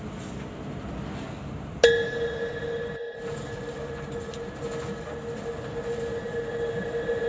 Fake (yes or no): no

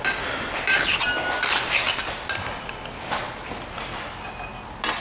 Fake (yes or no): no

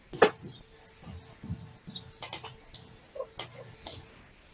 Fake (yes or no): no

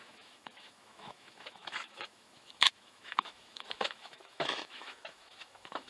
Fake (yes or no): yes